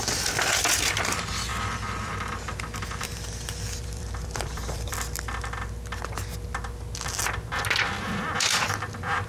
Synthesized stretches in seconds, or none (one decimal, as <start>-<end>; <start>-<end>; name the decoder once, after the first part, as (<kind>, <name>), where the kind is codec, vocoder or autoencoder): 1.5-4.9 (vocoder, BigVGAN v2)